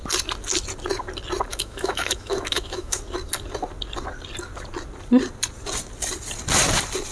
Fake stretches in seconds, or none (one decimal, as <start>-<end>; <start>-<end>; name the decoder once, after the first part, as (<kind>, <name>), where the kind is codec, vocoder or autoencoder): 1.5-3.0 (autoencoder, DAC-VAE)